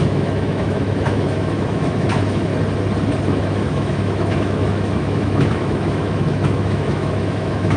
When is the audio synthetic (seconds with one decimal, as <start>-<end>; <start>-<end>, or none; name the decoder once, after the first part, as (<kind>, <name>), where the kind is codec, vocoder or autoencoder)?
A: 0.0-2.5 (autoencoder, DAC-VAE); 3.3-7.8